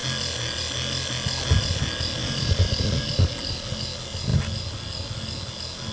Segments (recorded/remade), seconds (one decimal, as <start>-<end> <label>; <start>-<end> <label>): 0.0-2.2 recorded; 2.2-3.3 remade; 3.3-5.9 recorded